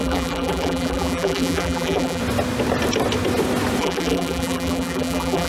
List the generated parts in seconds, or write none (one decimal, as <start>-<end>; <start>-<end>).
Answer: 0.0-2.2; 3.8-5.5